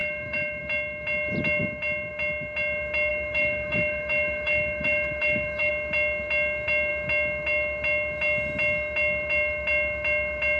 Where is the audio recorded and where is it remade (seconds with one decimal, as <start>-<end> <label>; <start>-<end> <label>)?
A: 0.0-0.6 remade; 0.6-3.1 recorded; 3.1-5.7 remade; 5.7-10.6 recorded